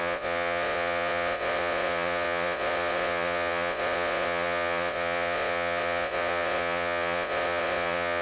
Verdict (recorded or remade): remade